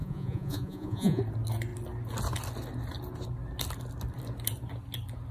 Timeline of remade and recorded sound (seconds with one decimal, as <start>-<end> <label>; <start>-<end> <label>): 0.0-1.2 remade; 1.2-5.3 recorded